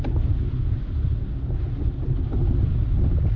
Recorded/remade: recorded